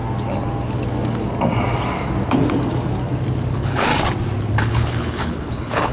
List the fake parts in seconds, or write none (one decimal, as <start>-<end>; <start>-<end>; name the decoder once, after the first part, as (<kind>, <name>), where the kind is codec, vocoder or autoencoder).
3.5-3.9 (codec, HILCodec); 4.5-5.9